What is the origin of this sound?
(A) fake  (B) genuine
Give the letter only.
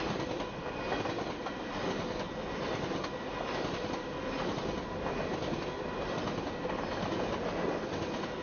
B